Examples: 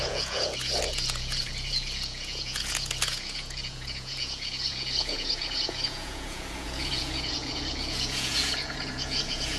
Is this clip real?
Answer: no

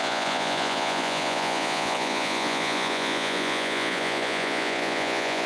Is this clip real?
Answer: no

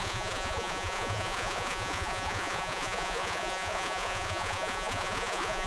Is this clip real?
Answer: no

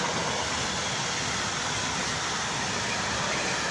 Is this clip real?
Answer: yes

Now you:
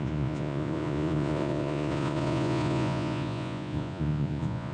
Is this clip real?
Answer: no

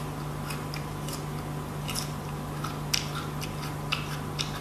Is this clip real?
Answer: yes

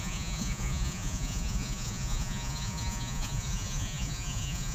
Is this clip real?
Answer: no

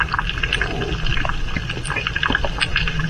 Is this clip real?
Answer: yes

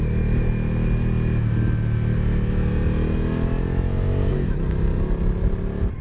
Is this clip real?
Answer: yes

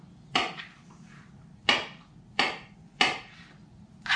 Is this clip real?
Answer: yes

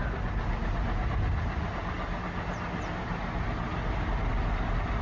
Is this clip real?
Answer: yes